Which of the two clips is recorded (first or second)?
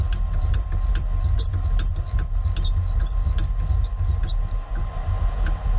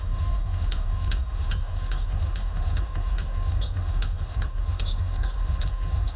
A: first